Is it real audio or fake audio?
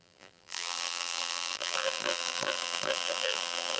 fake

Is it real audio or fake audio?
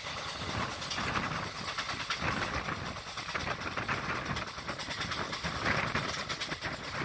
real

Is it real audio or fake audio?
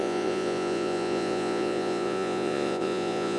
fake